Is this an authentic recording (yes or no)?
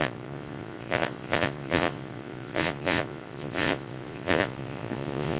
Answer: no